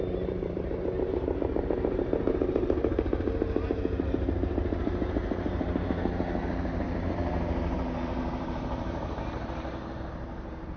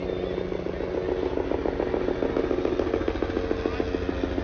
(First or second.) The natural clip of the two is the second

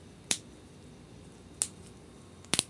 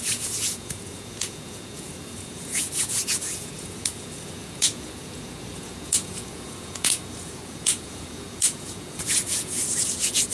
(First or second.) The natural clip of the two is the first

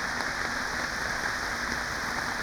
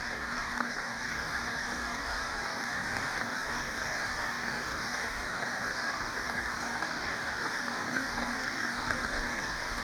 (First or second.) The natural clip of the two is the first